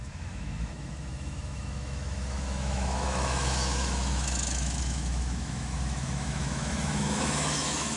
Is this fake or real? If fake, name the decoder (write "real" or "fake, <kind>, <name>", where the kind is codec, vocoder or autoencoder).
fake, autoencoder, DAC-VAE